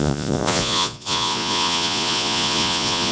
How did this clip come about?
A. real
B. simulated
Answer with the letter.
B